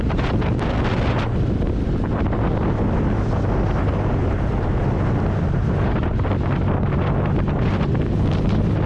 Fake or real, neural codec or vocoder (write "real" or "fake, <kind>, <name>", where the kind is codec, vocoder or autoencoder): real